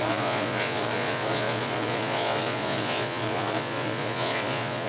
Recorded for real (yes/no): no